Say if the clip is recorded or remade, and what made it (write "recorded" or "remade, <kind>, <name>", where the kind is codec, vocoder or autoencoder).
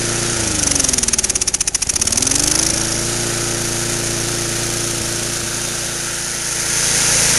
recorded